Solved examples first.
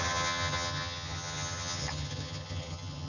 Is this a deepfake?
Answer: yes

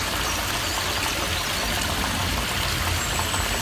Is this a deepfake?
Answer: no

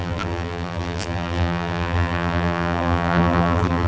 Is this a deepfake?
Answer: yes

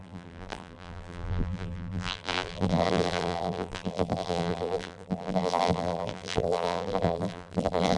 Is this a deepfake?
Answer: yes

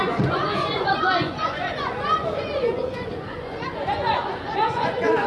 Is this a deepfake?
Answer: yes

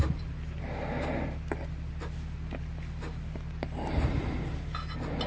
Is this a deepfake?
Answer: no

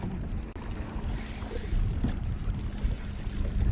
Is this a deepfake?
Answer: no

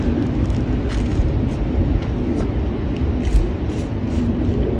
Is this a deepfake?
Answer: no